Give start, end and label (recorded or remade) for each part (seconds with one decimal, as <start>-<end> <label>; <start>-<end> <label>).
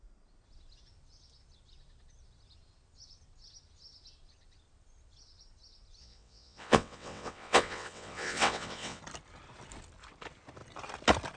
0.0-6.0 recorded; 6.0-9.0 remade; 9.0-11.4 recorded